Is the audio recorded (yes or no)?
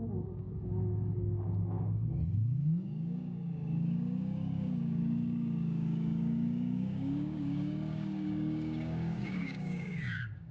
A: no